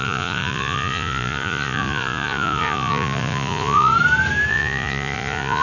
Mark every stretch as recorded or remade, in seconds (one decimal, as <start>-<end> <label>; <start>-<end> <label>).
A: 0.0-3.9 remade; 3.9-4.5 recorded; 4.5-5.6 remade